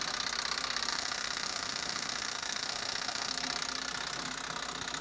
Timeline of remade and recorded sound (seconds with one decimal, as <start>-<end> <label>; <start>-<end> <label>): 0.0-0.9 recorded; 0.9-3.3 remade; 3.3-5.0 recorded